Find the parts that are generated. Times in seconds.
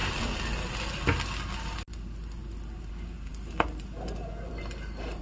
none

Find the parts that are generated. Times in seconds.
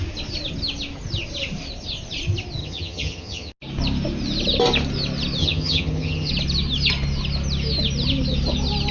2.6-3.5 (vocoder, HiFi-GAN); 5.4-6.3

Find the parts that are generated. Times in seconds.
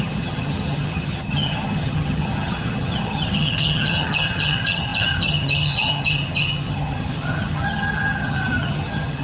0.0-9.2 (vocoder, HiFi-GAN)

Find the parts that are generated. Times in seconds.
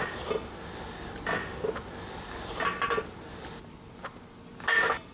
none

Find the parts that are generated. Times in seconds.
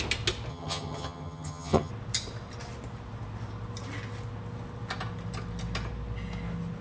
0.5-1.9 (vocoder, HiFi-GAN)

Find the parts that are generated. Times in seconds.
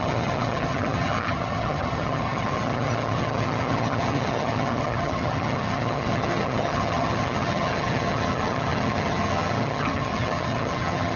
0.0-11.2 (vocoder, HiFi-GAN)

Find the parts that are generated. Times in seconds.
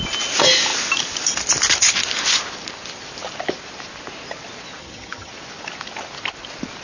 4.8-5.3 (vocoder, HiFi-GAN)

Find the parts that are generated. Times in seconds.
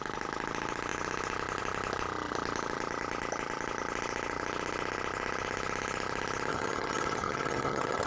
6.5-8.1 (vocoder, HiFi-GAN)